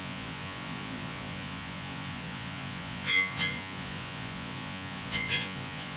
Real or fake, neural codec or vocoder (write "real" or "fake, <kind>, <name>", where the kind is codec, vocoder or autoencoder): fake, vocoder, Vocos